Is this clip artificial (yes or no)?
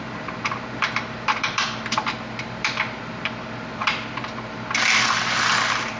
yes